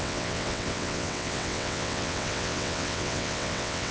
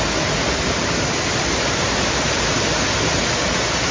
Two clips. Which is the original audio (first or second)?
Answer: second